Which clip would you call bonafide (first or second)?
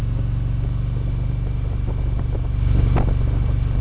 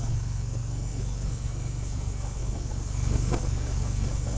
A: first